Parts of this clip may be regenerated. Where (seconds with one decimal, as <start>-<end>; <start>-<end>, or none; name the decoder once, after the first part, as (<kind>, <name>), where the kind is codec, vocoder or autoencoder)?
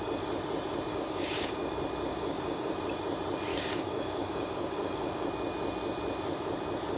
0.9-1.7 (codec, DAC); 2.1-2.7; 3.5-5.3